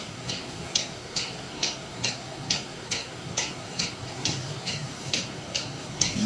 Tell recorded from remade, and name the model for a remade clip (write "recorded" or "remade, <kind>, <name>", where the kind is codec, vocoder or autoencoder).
remade, codec, SNAC